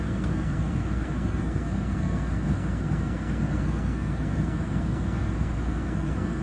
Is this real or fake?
fake